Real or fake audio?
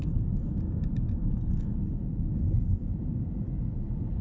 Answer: real